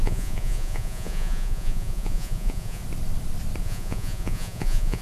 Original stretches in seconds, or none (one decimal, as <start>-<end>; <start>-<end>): 2.8-3.6